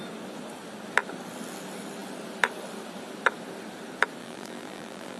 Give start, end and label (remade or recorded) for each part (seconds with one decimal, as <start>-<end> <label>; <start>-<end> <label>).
0.0-4.2 recorded; 4.2-5.2 remade